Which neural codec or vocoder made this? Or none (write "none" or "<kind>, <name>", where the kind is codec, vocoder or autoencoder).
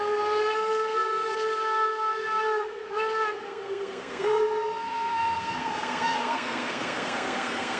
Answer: codec, SNAC